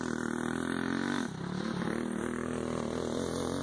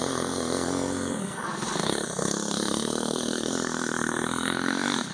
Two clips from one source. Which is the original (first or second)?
first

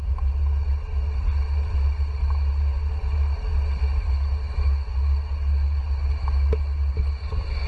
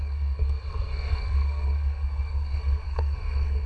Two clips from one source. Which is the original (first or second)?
first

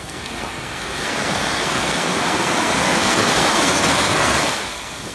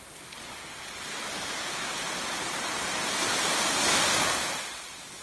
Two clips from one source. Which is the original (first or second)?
second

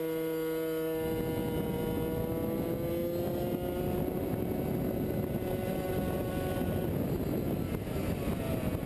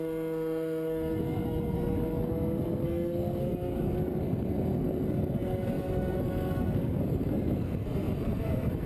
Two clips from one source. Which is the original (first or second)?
first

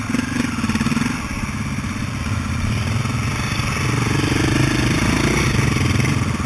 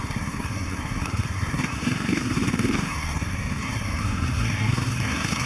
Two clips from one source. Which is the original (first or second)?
first